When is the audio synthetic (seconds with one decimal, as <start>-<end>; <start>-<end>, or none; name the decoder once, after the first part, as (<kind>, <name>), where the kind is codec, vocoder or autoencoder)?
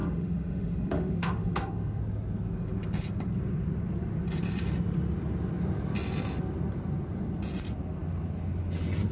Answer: 0.0-2.0 (autoencoder, DAC-VAE)